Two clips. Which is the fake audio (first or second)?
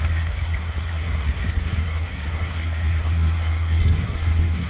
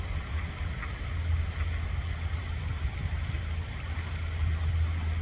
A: first